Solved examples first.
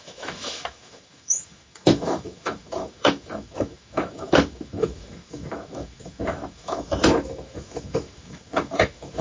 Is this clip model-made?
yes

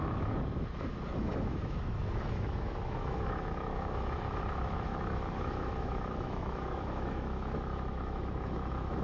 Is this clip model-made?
yes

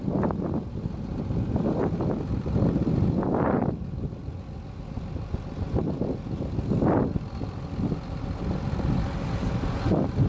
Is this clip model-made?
no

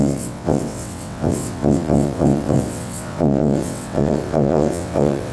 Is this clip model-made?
yes